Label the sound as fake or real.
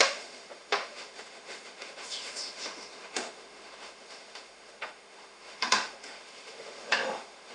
fake